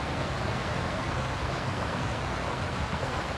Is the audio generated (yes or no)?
yes